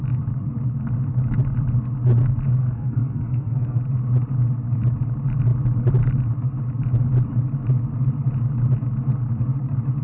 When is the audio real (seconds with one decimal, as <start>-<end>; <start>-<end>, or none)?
0.0-2.6; 3.8-10.0